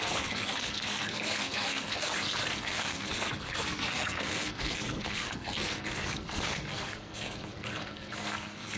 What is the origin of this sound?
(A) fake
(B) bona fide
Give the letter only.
A